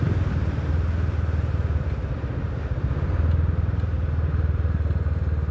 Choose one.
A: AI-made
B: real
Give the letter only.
B